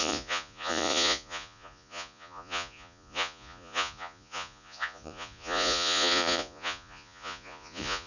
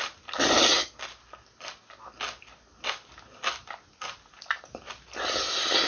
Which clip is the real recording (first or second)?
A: second